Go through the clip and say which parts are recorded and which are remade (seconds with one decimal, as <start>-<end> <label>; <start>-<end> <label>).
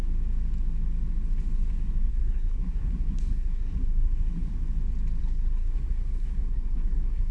0.0-2.1 recorded; 2.1-4.5 remade; 4.5-5.2 recorded; 5.2-7.3 remade